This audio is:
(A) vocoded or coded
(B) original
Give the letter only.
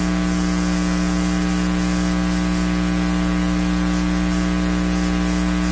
B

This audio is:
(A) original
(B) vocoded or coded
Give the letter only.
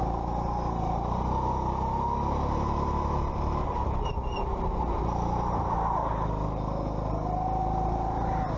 A